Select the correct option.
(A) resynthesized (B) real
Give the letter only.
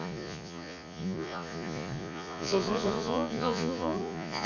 A